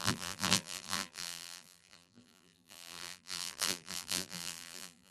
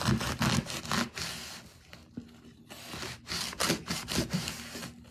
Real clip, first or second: second